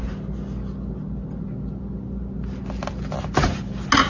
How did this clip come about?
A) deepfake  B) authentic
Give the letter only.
B